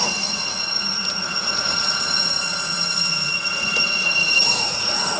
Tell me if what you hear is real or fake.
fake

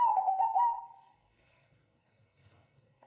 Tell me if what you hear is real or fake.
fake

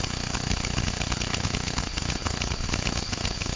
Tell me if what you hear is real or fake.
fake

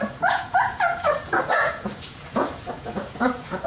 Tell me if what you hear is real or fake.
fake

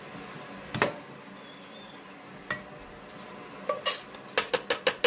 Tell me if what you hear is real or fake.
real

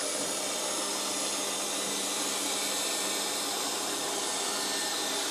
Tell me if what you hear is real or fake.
real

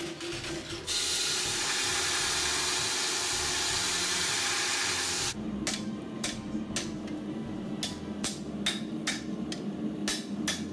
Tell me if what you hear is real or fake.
real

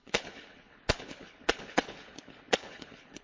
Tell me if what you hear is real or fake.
fake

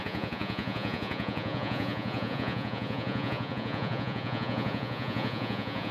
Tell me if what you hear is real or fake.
fake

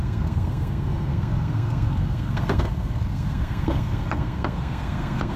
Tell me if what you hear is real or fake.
fake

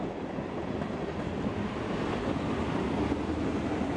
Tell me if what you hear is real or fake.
real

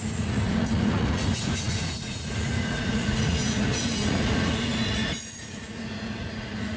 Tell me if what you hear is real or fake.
fake